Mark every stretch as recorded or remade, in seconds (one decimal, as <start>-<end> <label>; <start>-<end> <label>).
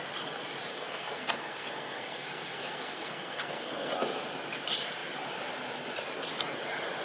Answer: 0.0-0.7 recorded; 0.7-3.9 remade; 3.9-7.0 recorded